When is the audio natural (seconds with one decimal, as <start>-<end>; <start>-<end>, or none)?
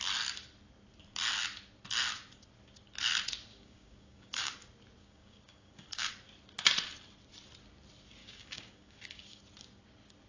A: 0.0-3.5; 4.5-5.0; 6.1-8.2; 9.4-10.3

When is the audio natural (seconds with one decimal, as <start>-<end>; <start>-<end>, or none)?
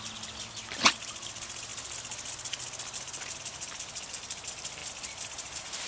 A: 0.0-5.9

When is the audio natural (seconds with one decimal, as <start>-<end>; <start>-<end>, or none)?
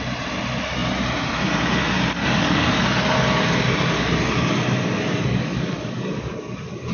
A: 0.0-2.2; 2.7-5.1